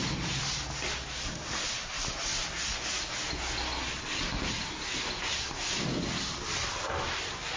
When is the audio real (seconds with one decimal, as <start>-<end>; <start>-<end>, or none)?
0.0-7.6